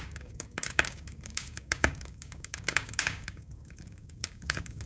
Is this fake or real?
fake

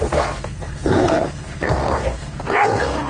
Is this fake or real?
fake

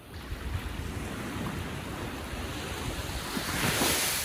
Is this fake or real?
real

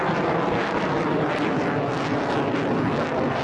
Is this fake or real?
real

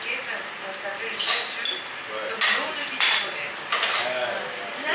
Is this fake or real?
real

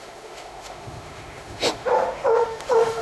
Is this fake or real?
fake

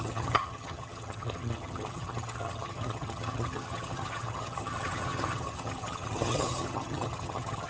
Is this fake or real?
fake